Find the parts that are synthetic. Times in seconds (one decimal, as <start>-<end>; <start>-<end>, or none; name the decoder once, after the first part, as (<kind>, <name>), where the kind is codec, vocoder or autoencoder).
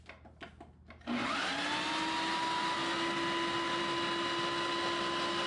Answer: none